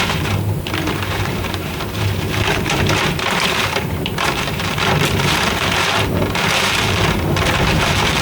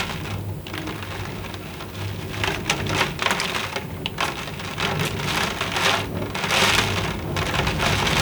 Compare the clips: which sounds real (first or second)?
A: second